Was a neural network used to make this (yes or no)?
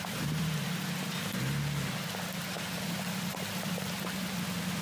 no